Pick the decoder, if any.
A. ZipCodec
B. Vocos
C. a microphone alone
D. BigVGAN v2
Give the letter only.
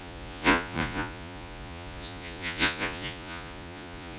B